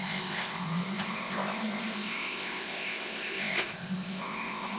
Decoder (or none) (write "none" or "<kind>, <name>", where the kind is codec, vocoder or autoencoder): codec, ZipCodec